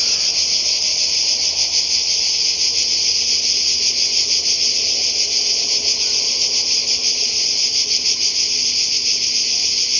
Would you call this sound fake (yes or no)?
no